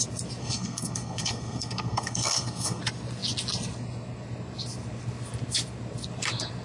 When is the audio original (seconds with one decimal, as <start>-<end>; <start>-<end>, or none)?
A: 0.0-0.4; 2.8-6.6

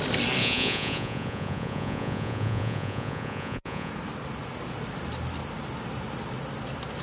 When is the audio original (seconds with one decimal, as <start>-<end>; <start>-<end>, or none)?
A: 0.0-0.4; 3.9-7.0

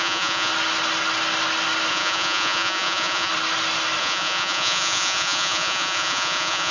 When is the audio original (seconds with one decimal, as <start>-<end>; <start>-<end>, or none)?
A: 0.5-1.9; 3.3-4.0

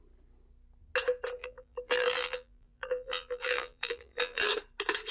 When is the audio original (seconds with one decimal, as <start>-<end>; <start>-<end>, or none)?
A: 0.0-1.4; 4.5-5.1

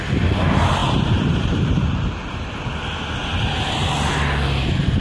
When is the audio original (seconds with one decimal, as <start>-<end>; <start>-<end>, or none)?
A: 0.0-0.8; 2.6-5.0

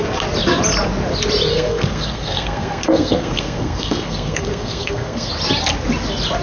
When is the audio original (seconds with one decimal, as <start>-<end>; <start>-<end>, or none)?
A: 0.0-1.5; 5.3-6.4

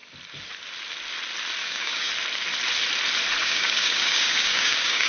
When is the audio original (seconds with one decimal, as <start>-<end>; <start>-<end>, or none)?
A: 0.0-1.6; 2.1-3.4

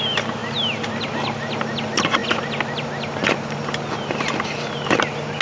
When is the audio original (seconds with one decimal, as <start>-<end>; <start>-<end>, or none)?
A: 0.0-5.4